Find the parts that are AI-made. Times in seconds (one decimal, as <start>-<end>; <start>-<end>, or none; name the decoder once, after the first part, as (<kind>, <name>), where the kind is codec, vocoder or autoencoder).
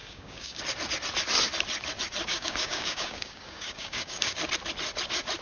0.0-0.6 (codec, DAC); 2.3-4.4